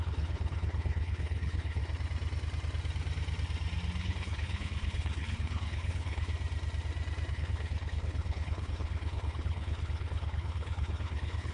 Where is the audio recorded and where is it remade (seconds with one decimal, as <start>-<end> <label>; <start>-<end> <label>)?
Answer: 0.0-1.8 remade; 1.8-4.0 recorded; 4.0-6.3 remade; 6.3-7.3 recorded; 7.3-11.5 remade